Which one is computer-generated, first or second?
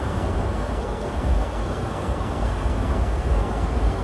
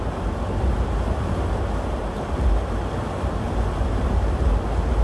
first